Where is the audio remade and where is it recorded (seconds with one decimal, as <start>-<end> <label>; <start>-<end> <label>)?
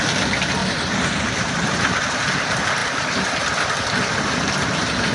0.0-0.6 recorded; 0.6-1.9 remade; 1.9-5.1 recorded